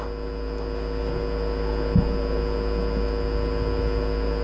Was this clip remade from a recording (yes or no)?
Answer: no